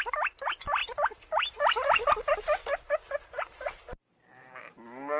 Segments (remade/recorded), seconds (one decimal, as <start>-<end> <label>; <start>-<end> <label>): 0.0-5.2 recorded